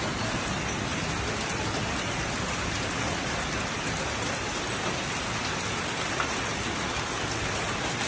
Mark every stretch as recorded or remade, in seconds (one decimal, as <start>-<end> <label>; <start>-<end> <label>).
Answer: 0.0-8.1 recorded